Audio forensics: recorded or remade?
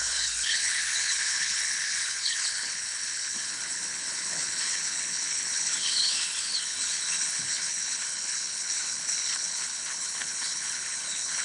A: remade